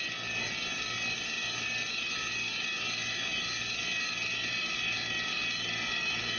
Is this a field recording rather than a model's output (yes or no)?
yes